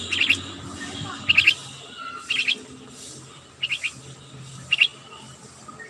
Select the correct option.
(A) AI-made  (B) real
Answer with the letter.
B